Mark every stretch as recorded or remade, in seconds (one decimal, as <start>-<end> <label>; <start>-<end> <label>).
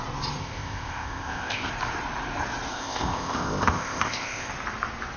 0.0-0.4 recorded; 0.4-1.7 remade; 1.7-2.7 recorded; 2.7-4.5 remade; 4.5-5.2 recorded